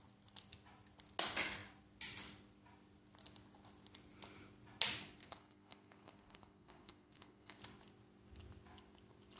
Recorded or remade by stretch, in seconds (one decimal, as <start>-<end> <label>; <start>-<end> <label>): 0.0-5.2 recorded; 5.2-7.6 remade; 7.6-9.4 recorded